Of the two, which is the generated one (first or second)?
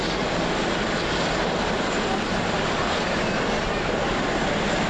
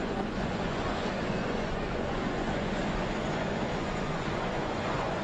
second